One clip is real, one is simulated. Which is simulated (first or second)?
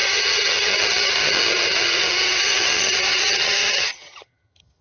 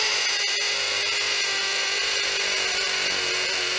first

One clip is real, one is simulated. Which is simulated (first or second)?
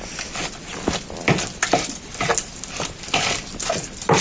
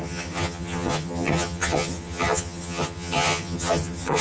second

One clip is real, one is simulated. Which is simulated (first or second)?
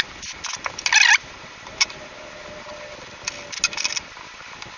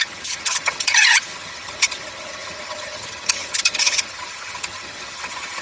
second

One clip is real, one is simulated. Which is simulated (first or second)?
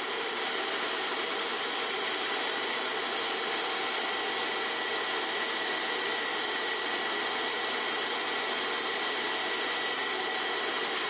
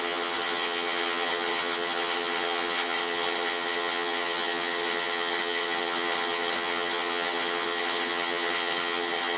second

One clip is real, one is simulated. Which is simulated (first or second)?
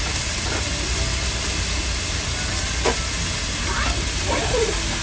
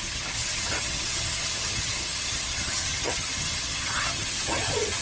second